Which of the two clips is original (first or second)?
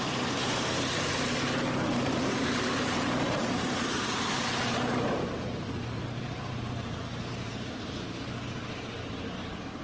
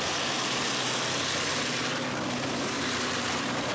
second